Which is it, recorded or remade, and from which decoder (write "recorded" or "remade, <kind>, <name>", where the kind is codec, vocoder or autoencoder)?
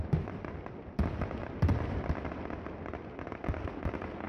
recorded